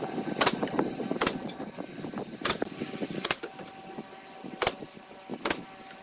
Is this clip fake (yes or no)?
no